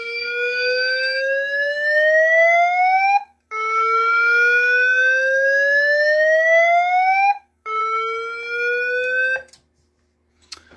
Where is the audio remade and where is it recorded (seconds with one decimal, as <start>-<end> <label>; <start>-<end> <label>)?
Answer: 0.0-7.8 remade; 7.8-10.3 recorded; 10.3-10.8 remade